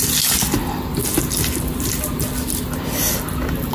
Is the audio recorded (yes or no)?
yes